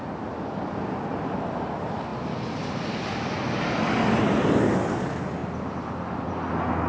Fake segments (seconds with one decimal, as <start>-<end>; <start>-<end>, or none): 5.4-6.4